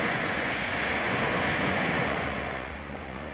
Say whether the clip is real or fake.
fake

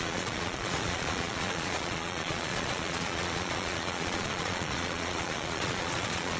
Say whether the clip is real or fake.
fake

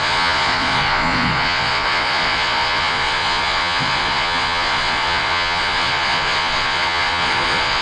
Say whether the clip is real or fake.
fake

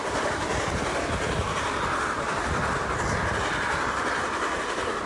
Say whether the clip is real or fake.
real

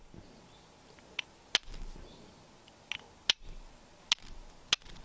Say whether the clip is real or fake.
real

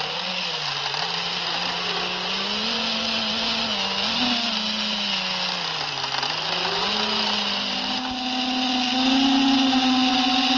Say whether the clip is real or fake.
real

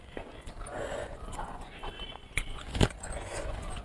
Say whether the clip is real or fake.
fake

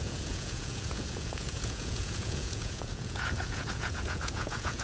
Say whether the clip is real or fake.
fake